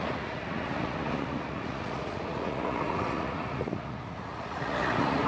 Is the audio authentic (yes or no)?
no